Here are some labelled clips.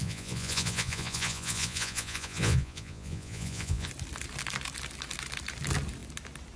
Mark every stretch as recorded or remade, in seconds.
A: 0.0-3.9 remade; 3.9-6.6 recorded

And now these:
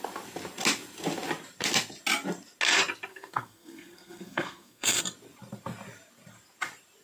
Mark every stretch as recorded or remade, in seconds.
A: 0.0-3.1 recorded; 3.1-5.0 remade; 5.0-7.0 recorded

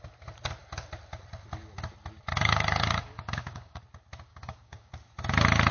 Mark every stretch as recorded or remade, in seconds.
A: 0.0-2.3 recorded; 2.3-3.8 remade; 3.8-4.3 recorded; 4.3-4.9 remade; 4.9-5.7 recorded